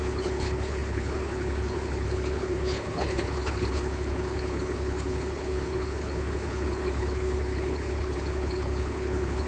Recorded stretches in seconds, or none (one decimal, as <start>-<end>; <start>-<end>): none